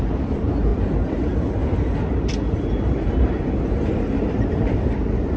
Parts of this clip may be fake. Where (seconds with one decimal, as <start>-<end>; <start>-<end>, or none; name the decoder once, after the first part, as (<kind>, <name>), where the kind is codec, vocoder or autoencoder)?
0.0-1.6 (vocoder, BigVGAN v2); 4.8-5.4